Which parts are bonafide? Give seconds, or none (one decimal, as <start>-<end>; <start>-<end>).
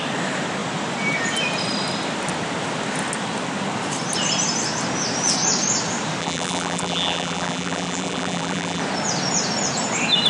0.0-6.2; 8.8-10.3